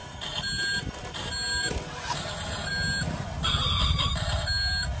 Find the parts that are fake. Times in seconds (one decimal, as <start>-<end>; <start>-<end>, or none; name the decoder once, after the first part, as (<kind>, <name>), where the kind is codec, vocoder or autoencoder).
none